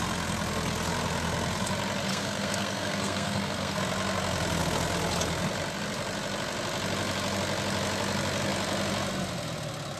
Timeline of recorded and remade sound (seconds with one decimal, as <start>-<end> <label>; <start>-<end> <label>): 0.0-2.1 recorded; 2.1-3.8 remade; 3.8-10.0 recorded